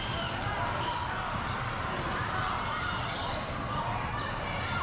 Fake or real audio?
real